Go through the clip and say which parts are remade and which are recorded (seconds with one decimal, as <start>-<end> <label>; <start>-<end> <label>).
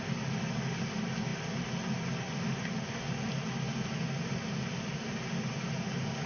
0.0-6.3 recorded